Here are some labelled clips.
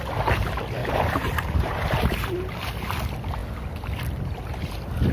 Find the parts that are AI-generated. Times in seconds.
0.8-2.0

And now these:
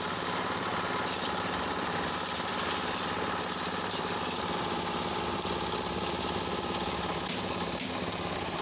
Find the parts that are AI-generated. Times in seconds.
0.0-2.5; 3.8-8.6

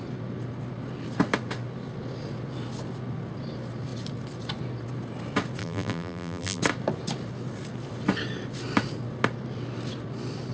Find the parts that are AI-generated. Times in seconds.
5.6-6.6

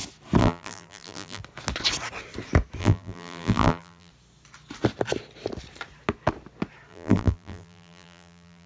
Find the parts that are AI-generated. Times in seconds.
0.4-1.4; 2.8-4.1; 6.9-8.7

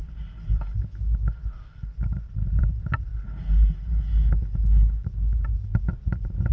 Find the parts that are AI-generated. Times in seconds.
0.0-3.1; 5.9-6.5